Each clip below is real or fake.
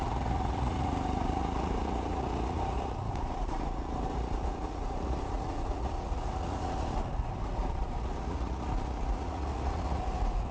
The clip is fake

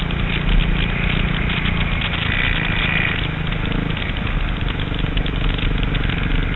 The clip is real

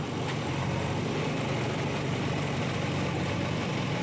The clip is fake